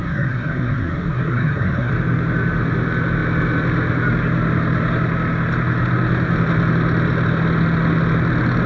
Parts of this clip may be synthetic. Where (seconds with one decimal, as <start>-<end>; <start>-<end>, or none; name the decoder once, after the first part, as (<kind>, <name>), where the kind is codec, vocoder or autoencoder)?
0.0-1.9 (codec, SNAC)

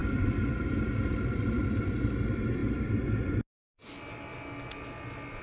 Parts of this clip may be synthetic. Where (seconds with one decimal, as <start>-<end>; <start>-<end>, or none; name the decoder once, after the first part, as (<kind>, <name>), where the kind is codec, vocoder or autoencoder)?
0.0-1.6 (vocoder, BigVGAN v2)